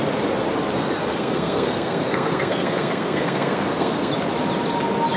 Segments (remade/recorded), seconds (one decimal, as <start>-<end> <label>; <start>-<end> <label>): 0.0-1.0 recorded; 1.0-4.1 remade; 4.1-5.2 recorded